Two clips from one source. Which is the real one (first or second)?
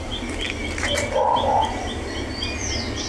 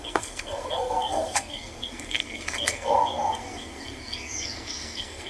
first